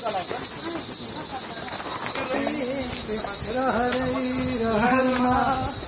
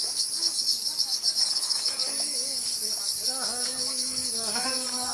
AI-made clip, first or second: second